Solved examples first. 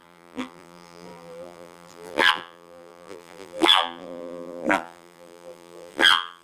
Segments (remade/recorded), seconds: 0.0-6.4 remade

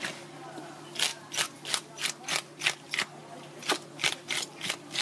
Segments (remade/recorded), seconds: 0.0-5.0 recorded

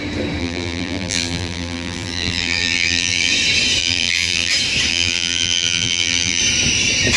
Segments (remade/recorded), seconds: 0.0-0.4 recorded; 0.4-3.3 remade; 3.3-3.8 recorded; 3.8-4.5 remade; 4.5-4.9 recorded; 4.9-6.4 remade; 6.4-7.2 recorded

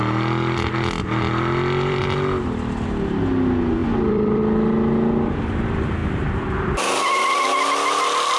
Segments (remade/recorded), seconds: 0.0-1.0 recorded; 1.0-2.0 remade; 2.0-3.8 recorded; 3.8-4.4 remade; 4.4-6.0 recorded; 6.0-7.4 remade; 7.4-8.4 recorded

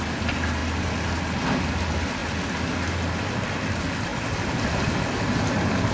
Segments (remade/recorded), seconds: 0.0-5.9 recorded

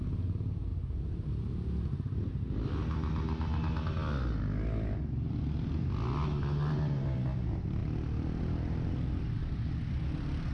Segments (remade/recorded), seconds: 0.0-10.5 recorded

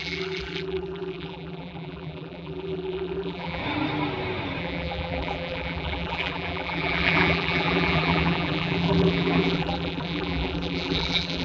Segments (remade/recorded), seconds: 0.0-3.6 remade; 3.6-4.6 recorded; 4.6-11.4 remade

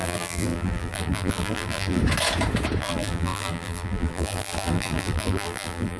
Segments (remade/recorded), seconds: 0.0-2.0 remade; 2.0-2.8 recorded; 2.8-6.0 remade